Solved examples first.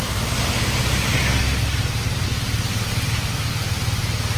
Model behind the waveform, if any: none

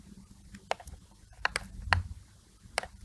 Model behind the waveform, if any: vocoder, BigVGAN v2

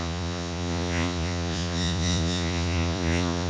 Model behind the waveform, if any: vocoder, Vocos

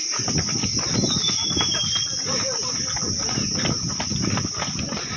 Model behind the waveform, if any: none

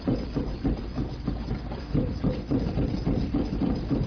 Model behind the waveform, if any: vocoder, BigVGAN v2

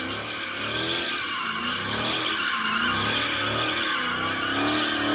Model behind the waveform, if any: none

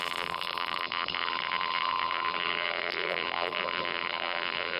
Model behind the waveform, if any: vocoder, BigVGAN v2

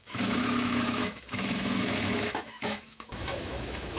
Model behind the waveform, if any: autoencoder, DAC-VAE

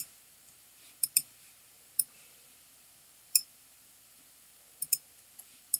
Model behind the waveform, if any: vocoder, BigVGAN v2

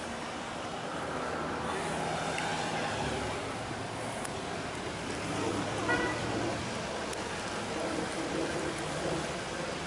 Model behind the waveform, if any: none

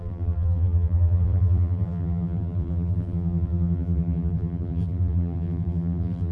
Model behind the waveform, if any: vocoder, BigVGAN v2